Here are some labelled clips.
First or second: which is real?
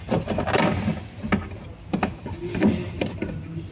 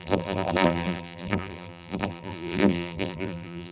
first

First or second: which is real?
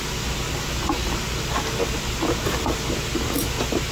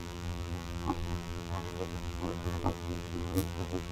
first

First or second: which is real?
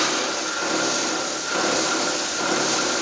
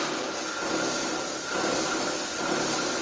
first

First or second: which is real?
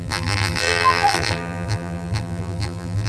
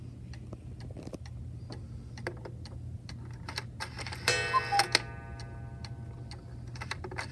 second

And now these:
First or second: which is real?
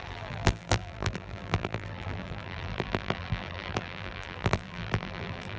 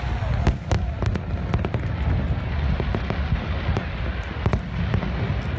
second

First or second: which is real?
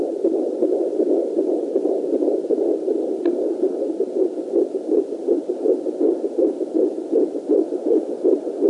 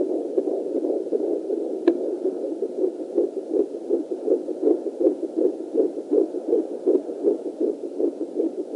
second